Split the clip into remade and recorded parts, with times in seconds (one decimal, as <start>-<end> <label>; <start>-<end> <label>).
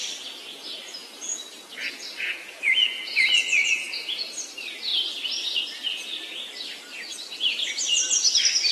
0.0-1.0 recorded; 1.0-4.2 remade; 4.2-8.7 recorded